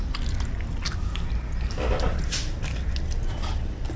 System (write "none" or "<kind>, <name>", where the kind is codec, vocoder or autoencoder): none